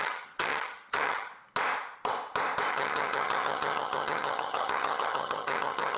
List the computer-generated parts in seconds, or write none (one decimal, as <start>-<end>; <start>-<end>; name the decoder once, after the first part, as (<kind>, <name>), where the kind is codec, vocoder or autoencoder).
0.0-1.3 (vocoder, HiFi-GAN); 2.7-6.0